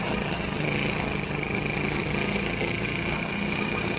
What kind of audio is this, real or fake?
fake